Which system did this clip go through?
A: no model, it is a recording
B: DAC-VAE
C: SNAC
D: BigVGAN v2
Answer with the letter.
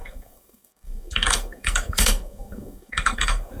C